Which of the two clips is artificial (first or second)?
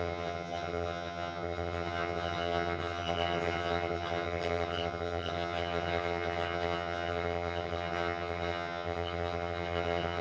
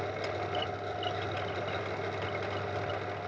first